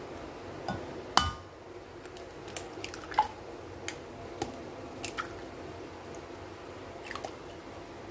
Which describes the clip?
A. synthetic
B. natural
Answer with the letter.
B